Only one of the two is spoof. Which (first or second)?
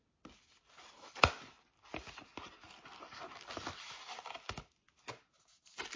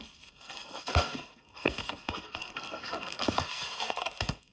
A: second